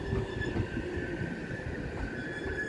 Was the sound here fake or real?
real